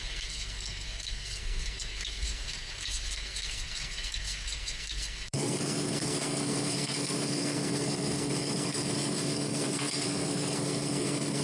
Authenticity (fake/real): fake